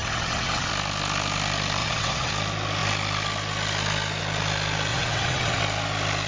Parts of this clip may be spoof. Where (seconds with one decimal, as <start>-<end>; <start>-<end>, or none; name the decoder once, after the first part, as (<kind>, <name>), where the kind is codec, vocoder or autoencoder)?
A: 0.0-0.7 (vocoder, WaveNeXt); 1.8-2.3; 4.9-5.6